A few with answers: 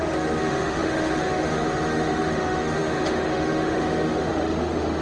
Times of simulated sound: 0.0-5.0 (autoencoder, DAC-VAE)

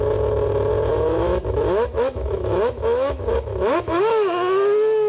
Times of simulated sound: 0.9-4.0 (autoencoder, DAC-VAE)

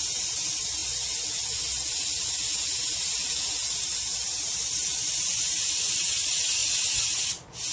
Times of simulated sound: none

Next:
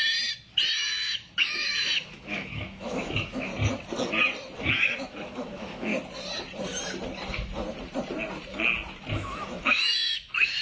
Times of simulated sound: 0.7-3.5 (autoencoder, DAC-VAE); 4.6-5.9; 9.1-10.6